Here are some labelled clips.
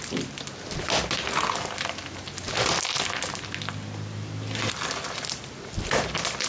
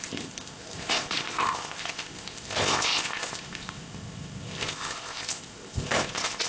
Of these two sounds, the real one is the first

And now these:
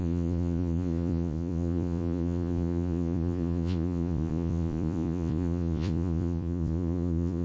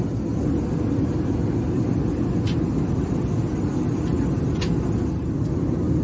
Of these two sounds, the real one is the second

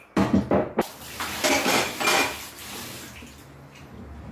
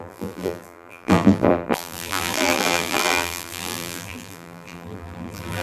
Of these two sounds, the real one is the first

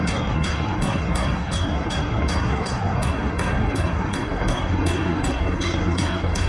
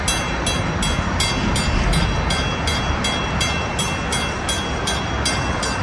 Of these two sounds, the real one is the second